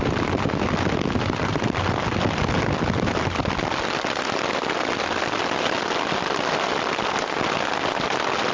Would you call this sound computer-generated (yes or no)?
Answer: no